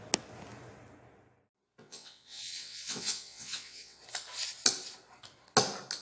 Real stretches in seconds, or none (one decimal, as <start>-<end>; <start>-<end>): 0.0-1.8; 4.0-6.0